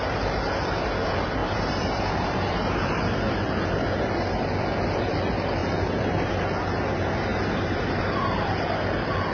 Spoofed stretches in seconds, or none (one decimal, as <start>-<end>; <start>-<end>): 1.4-3.0; 5.6-6.3; 7.3-8.5